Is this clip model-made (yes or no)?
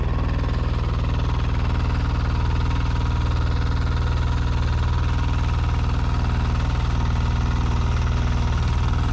no